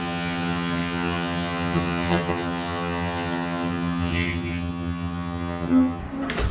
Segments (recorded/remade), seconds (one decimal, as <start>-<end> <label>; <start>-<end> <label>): 0.0-6.0 remade; 6.0-6.5 recorded